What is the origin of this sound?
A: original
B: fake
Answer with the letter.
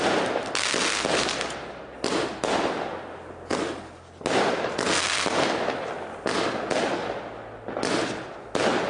A